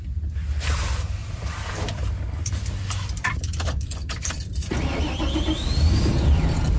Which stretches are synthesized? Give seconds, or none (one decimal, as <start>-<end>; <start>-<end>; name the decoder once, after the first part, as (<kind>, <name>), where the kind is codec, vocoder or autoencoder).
1.2-5.0 (vocoder, BigVGAN v2)